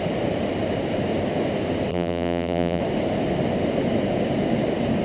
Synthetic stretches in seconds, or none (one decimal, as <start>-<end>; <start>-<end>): 1.9-2.8